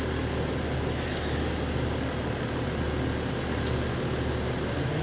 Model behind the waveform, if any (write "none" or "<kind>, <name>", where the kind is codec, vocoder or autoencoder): none